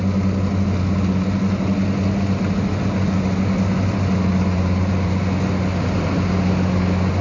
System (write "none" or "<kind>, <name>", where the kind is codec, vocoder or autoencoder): none